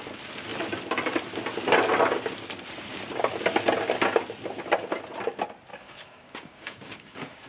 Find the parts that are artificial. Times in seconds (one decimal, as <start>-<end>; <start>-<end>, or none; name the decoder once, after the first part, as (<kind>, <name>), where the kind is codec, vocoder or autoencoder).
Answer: 5.7-7.5 (codec, DAC)